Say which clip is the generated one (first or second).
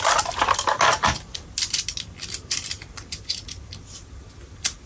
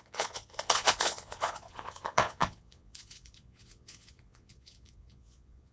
second